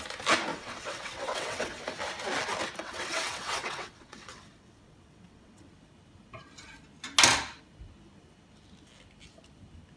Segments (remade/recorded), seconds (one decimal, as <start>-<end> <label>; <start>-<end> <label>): 0.0-0.5 recorded; 0.5-1.8 remade; 1.8-2.8 recorded; 2.8-5.7 remade; 5.7-10.0 recorded